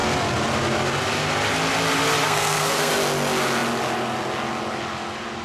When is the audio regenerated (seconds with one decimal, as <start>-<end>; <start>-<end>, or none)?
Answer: 2.2-2.9

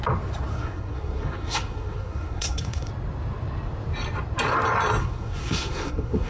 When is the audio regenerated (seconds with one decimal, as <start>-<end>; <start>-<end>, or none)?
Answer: 0.5-2.9; 5.0-6.3

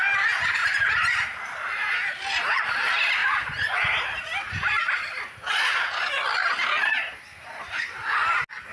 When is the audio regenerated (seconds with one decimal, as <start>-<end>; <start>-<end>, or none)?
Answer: 0.6-1.2; 3.2-4.2

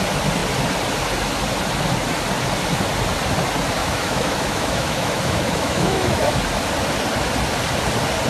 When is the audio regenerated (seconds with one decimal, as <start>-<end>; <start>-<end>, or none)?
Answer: 3.8-6.4